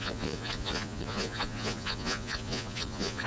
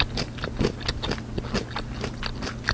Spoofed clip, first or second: first